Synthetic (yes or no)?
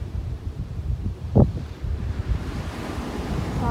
yes